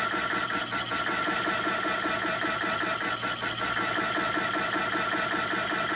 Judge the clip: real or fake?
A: real